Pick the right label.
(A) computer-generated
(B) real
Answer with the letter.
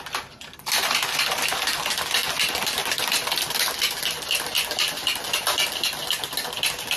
B